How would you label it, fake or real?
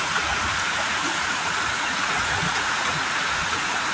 fake